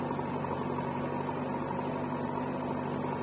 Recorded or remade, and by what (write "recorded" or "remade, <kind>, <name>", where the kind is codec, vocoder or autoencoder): recorded